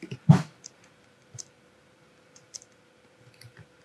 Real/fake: fake